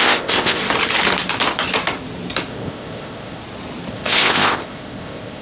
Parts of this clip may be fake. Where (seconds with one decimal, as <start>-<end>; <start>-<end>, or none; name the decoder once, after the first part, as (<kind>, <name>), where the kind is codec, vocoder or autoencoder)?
0.0-0.6 (codec, ZipCodec); 2.5-3.4; 3.9-5.4